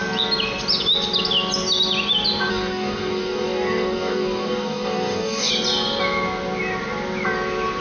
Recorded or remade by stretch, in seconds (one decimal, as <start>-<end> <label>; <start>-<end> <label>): 0.0-2.5 recorded; 2.5-5.5 remade; 5.5-7.8 recorded